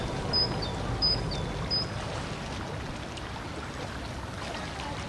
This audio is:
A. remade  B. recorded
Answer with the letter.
B